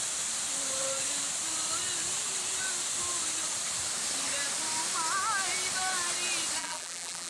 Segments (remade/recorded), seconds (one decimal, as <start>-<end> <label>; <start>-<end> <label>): 0.0-6.6 recorded; 6.6-7.3 remade